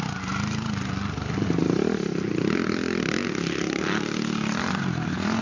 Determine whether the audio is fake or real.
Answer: real